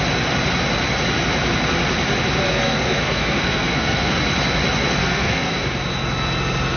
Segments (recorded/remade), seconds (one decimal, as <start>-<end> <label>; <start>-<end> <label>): 0.0-2.5 recorded; 2.5-4.1 remade; 4.1-5.0 recorded; 5.0-5.5 remade; 5.5-6.8 recorded